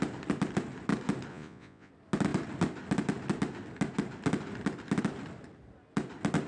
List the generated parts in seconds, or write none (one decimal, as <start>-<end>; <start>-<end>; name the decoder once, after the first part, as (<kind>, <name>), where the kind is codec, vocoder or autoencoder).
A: 1.3-1.9 (vocoder, Vocos)